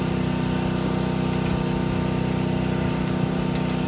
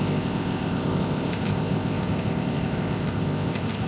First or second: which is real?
first